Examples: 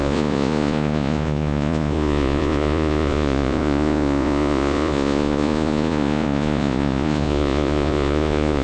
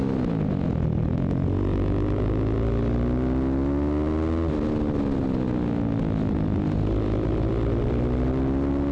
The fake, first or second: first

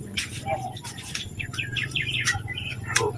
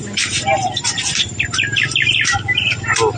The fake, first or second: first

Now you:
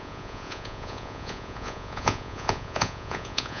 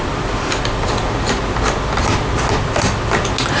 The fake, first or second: first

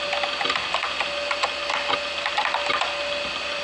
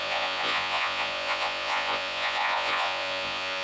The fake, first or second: second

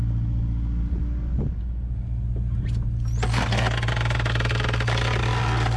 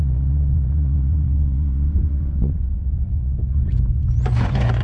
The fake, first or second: second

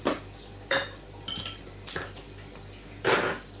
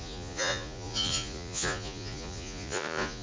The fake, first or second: second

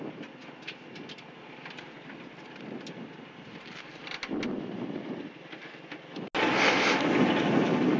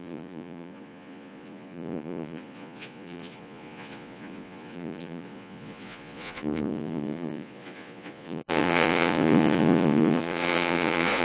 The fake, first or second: second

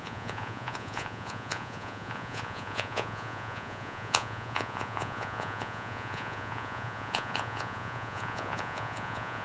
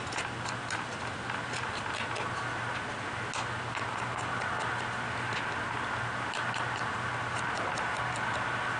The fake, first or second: first